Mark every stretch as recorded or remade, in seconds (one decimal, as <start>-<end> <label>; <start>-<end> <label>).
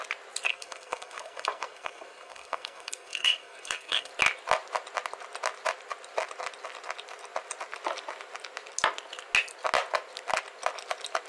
0.0-0.5 recorded; 0.5-4.1 remade; 4.1-11.3 recorded